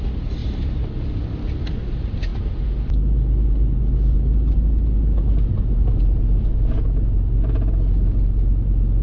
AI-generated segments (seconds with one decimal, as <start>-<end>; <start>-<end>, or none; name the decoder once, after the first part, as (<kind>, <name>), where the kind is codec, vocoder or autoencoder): 0.4-1.8 (vocoder, BigVGAN v2)